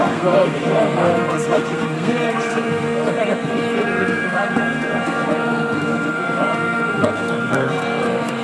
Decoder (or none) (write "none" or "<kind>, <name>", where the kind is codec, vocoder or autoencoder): codec, SNAC